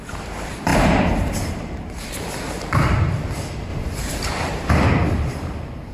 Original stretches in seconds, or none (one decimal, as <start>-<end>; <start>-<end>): 0.0-0.7; 2.0-3.7; 4.7-5.9